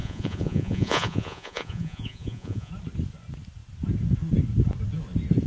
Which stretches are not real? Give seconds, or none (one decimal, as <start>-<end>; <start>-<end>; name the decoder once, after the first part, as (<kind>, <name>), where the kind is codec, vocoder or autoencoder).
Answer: 0.0-2.7 (vocoder, Vocos)